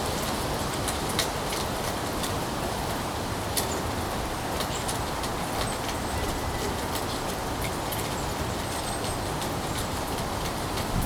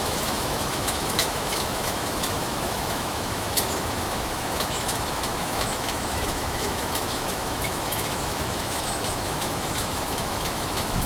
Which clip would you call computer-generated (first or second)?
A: second